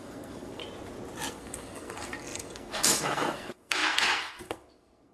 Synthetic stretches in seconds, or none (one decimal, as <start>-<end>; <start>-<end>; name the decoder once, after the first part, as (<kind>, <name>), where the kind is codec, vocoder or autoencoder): 0.0-0.6 (codec, SNAC); 1.3-5.1